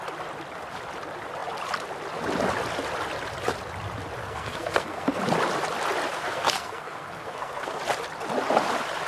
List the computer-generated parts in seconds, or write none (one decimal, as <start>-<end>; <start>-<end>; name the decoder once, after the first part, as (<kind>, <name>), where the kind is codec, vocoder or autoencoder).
4.2-5.2 (codec, SNAC); 6.1-7.8